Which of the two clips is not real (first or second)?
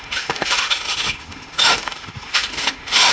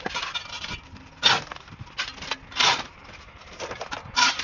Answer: first